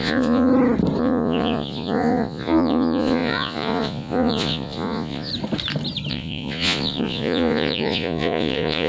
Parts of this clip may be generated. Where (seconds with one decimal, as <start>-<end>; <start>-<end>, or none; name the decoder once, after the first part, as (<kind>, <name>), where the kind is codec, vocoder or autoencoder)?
0.0-0.5 (vocoder, Vocos); 1.0-5.3; 6.1-8.9